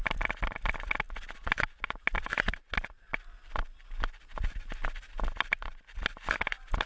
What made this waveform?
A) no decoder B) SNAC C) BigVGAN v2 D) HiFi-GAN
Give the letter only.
A